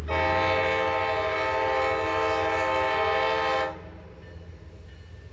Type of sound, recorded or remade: recorded